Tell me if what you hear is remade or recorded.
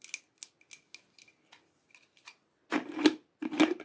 recorded